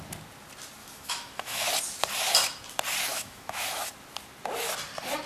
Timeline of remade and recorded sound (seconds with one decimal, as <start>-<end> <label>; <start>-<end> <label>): 0.0-0.8 recorded; 0.8-1.7 remade; 1.7-3.1 recorded; 3.1-3.9 remade; 3.9-5.3 recorded